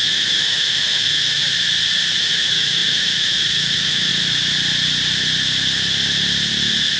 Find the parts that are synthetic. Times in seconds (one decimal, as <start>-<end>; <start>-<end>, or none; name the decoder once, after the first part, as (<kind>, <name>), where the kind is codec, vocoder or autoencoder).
0.0-1.4 (autoencoder, DAC-VAE); 2.2-4.1